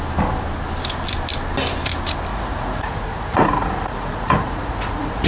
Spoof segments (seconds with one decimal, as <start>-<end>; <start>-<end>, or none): 2.3-5.3

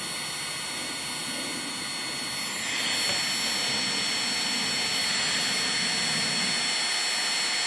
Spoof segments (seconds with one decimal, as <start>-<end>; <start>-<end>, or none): none